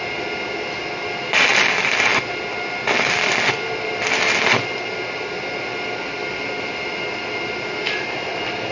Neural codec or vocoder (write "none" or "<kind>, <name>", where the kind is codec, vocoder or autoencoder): none